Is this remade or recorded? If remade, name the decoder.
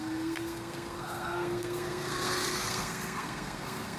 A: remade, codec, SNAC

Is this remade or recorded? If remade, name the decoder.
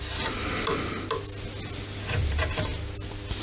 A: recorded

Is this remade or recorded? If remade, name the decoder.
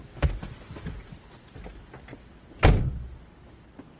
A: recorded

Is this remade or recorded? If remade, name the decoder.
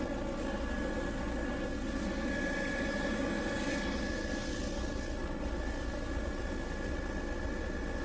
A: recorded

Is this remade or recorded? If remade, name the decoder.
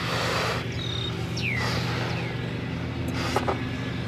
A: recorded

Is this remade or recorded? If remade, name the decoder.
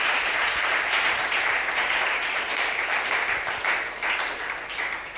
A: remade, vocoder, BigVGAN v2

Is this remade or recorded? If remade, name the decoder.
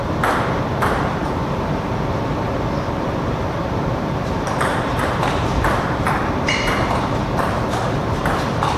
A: remade, vocoder, BigVGAN v2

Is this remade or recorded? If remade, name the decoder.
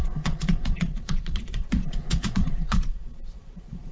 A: remade, vocoder, Vocos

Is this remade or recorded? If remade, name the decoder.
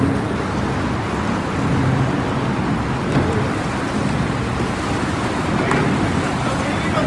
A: recorded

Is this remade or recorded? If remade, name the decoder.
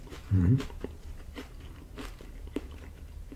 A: remade, vocoder, BigVGAN v2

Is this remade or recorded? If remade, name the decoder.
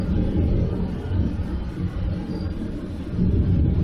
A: recorded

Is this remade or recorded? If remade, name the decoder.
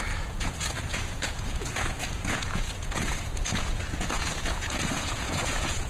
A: remade, vocoder, Vocos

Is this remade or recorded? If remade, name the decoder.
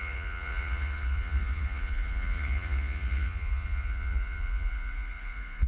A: remade, vocoder, Vocos